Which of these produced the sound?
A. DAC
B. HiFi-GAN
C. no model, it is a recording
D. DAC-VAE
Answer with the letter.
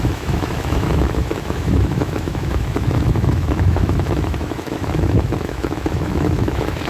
D